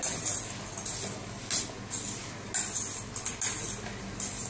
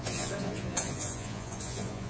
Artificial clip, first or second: second